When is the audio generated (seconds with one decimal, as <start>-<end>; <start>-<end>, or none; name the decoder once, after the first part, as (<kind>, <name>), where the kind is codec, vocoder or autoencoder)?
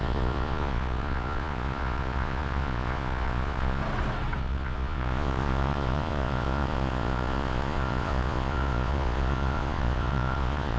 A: 0.0-3.8 (vocoder, Vocos); 4.4-10.8